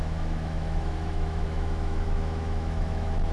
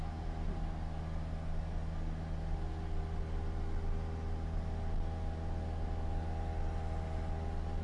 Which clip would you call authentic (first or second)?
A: second